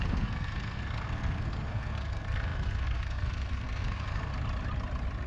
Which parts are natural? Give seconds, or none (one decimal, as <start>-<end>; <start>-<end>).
4.3-5.3